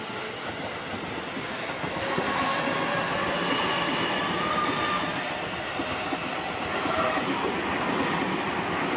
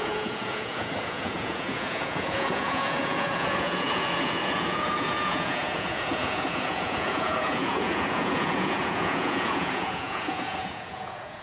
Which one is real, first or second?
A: first